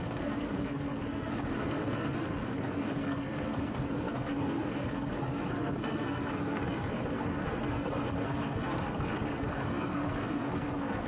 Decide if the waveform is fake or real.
fake